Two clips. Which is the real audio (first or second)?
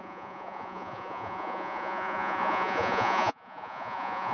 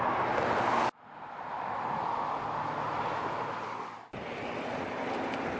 second